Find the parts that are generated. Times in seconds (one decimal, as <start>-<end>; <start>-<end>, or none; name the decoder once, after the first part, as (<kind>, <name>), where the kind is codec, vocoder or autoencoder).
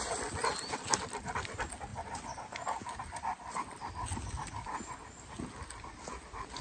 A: none